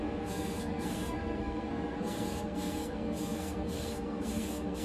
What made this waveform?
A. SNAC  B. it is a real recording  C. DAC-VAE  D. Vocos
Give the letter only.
A